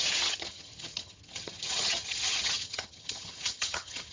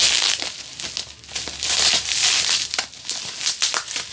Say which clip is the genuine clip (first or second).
second